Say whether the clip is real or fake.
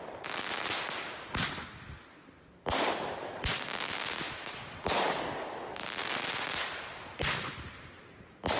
real